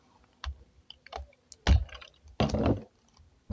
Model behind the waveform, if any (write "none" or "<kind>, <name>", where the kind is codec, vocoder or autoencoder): none